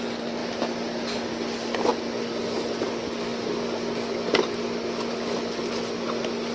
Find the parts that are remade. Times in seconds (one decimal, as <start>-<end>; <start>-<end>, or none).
none